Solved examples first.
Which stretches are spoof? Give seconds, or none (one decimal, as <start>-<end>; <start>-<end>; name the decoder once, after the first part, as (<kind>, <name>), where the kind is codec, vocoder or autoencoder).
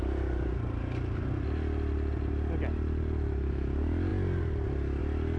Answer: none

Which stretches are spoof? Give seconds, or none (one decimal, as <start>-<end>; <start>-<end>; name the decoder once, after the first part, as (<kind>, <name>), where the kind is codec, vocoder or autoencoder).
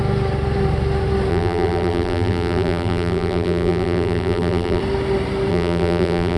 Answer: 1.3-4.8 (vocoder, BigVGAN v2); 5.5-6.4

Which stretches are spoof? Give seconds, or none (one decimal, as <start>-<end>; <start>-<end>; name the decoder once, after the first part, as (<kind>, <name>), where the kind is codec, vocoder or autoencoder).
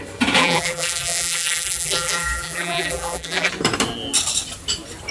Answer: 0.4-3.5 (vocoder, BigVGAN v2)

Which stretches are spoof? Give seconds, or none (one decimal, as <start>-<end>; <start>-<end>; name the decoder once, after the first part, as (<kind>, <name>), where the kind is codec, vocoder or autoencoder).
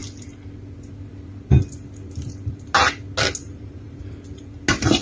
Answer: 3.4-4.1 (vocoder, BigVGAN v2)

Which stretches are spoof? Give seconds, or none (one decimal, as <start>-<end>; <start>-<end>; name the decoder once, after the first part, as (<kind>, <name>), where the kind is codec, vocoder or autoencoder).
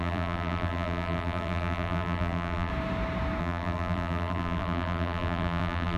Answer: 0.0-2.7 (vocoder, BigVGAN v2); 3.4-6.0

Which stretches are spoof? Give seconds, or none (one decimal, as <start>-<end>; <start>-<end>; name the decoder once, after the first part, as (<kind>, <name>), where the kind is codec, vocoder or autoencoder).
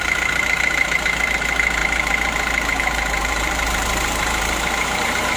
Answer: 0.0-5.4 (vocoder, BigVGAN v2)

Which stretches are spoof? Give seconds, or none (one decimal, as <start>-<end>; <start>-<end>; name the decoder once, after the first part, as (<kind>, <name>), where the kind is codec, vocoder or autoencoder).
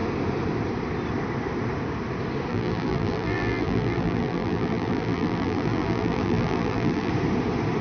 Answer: 2.5-7.1 (vocoder, BigVGAN v2)